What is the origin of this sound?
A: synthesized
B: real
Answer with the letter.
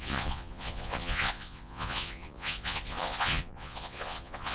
A